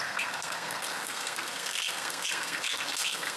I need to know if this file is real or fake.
fake